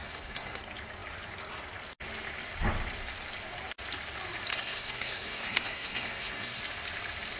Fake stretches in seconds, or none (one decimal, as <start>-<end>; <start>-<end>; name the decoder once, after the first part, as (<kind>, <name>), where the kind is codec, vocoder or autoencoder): 0.0-0.6 (codec, SNAC); 4.5-6.6

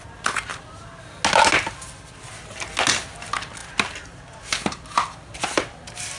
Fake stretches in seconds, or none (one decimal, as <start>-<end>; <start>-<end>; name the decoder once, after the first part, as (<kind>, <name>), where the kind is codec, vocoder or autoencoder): none